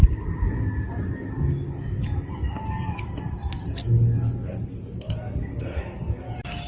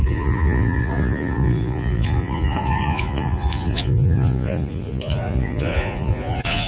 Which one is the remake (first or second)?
second